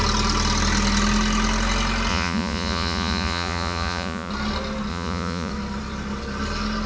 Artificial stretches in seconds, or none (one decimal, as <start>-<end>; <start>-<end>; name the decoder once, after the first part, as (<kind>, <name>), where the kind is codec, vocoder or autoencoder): 2.1-4.3 (vocoder, Vocos); 4.9-5.5